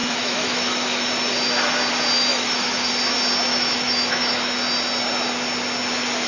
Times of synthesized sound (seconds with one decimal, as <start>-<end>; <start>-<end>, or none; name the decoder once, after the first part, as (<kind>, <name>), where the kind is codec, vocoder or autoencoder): 0.0-1.1 (autoencoder, DAC-VAE); 2.3-2.9; 3.5-4.5